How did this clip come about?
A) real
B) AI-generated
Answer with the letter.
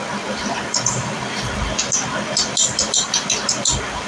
A